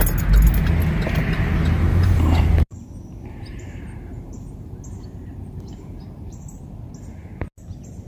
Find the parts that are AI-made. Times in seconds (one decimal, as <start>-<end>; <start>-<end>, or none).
1.9-6.6